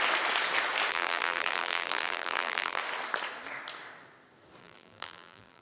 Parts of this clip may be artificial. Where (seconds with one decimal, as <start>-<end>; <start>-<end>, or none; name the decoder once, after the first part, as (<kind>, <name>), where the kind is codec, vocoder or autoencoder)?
0.9-2.8 (vocoder, BigVGAN v2); 4.6-5.6